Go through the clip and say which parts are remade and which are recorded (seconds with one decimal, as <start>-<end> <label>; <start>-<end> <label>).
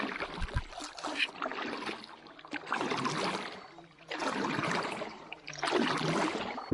0.0-4.2 recorded; 4.2-5.5 remade; 5.5-6.7 recorded